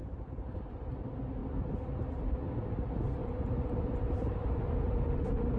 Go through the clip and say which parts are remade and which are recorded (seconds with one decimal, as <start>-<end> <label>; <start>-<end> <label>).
0.0-0.7 remade; 0.7-3.2 recorded; 3.2-5.6 remade